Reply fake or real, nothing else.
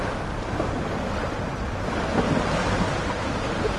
real